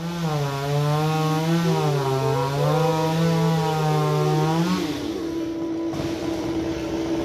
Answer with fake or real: real